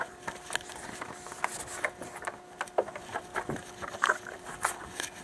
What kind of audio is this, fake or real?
real